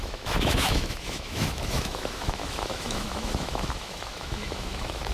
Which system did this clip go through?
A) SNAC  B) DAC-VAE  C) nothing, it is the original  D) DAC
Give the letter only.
B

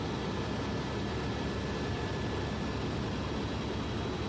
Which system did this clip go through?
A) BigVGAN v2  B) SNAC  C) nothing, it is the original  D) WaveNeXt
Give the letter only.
C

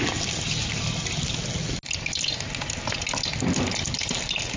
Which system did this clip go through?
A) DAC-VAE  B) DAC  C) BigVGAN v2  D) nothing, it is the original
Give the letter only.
D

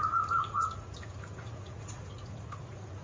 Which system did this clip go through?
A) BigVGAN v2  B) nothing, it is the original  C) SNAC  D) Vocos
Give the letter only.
D